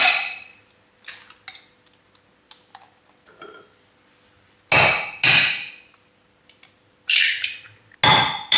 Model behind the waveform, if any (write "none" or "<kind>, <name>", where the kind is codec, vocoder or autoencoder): none